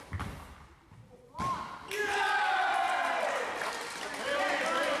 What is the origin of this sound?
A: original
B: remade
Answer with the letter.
A